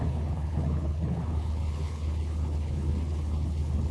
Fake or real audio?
fake